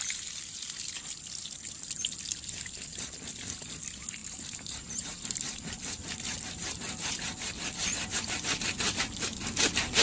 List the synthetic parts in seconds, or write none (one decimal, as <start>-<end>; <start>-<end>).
4.2-6.5